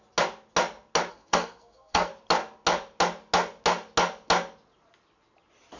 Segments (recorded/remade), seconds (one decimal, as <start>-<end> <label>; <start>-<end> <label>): 0.0-1.1 recorded; 1.1-2.1 remade; 2.1-5.8 recorded